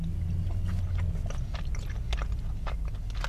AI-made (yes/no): no